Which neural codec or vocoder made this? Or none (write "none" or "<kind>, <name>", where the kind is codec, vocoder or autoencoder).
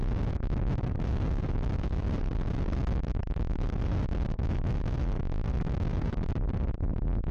none